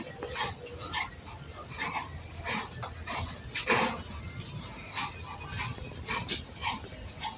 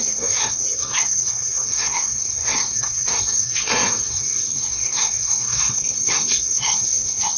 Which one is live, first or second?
first